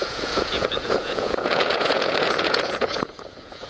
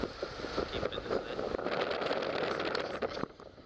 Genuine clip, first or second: second